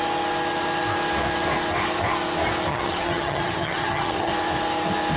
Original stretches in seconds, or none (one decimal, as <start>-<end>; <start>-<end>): 0.0-2.7; 4.3-5.2